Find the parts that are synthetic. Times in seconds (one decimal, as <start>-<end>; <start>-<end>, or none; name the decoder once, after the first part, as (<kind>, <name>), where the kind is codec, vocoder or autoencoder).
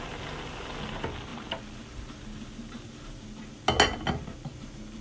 none